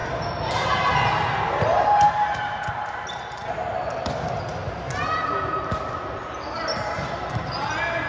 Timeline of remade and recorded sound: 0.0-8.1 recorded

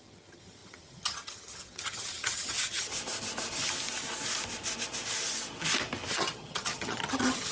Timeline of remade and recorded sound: 0.0-2.9 remade; 2.9-6.1 recorded; 6.1-7.5 remade

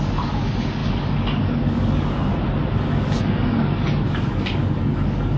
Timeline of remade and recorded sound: 0.0-2.3 remade; 2.3-2.9 recorded; 2.9-5.4 remade

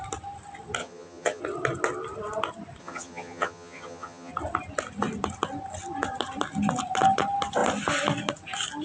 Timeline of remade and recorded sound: 0.0-0.8 recorded; 0.8-1.4 remade; 1.4-2.8 recorded; 2.8-4.3 remade; 4.3-8.8 recorded

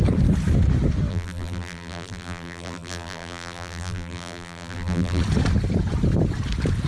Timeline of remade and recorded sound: 0.0-1.1 recorded; 1.1-5.2 remade; 5.2-6.9 recorded

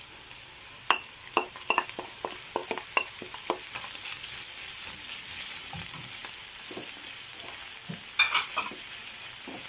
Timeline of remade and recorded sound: 0.0-6.2 remade; 6.2-8.4 recorded; 8.4-9.7 remade

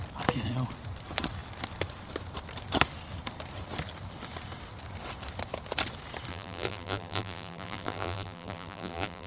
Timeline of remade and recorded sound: 0.0-6.3 recorded; 6.3-9.3 remade

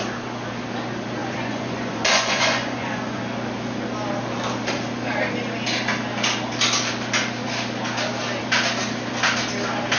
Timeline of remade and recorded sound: 0.0-1.2 recorded; 1.2-3.2 remade; 3.2-10.0 recorded